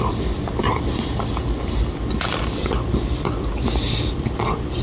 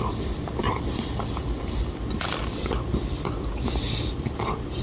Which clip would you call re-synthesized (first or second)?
second